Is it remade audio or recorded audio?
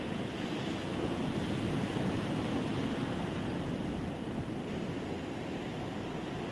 recorded